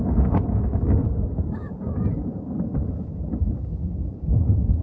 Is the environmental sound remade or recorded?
remade